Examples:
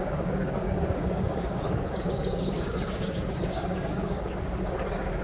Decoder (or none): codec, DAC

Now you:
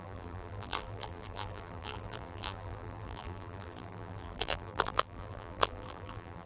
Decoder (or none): vocoder, BigVGAN v2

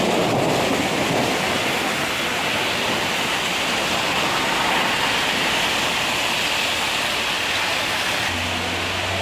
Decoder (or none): none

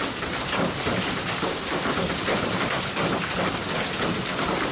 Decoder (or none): none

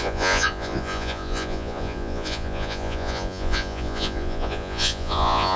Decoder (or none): vocoder, Vocos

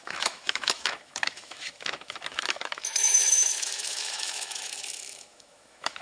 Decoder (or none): autoencoder, DAC-VAE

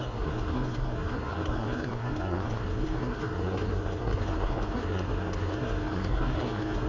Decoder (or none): codec, SNAC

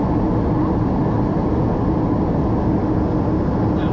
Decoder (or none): none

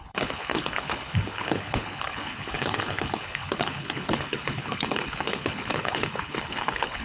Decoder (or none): codec, HILCodec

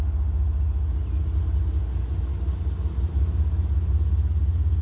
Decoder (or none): none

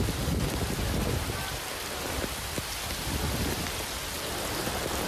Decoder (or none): none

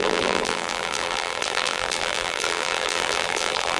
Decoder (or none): vocoder, BigVGAN v2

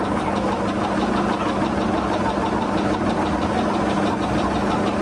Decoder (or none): none